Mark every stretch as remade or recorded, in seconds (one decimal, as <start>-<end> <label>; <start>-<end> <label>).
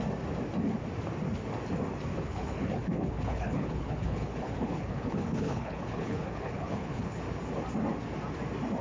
0.0-2.1 recorded; 2.1-7.2 remade; 7.2-8.8 recorded